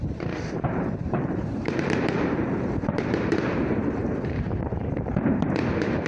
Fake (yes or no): yes